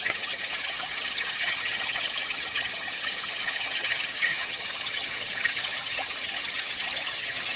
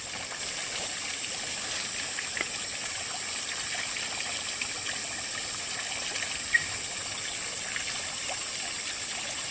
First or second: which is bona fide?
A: second